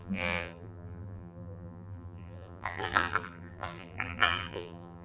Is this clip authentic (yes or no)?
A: no